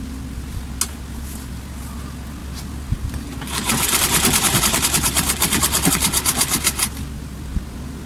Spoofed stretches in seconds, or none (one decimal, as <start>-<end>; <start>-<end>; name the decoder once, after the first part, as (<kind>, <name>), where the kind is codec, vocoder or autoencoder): 2.4-5.9 (vocoder, BigVGAN v2)